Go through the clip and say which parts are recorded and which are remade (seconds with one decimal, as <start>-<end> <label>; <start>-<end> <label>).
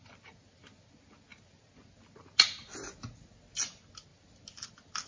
0.0-5.1 recorded